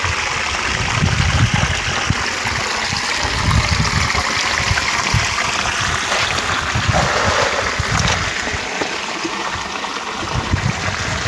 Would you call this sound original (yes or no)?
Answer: yes